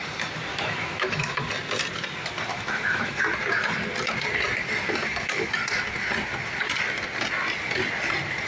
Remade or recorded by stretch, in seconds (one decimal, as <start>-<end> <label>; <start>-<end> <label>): 0.0-0.5 recorded; 0.5-1.4 remade; 1.4-2.5 recorded; 2.5-3.2 remade; 3.2-5.0 recorded; 5.0-5.5 remade; 5.5-8.5 recorded